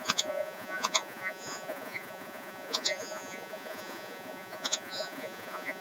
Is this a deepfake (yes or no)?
yes